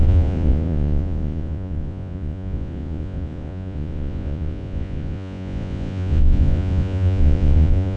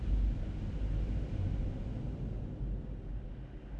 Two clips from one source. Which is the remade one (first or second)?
first